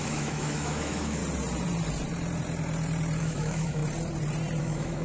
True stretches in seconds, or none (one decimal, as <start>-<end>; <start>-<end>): 1.2-3.2; 3.8-4.6